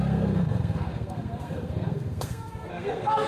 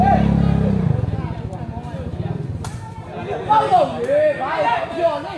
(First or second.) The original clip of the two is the second